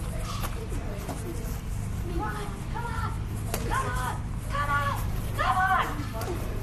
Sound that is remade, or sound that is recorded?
recorded